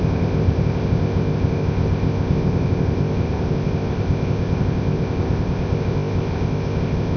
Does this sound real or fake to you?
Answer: fake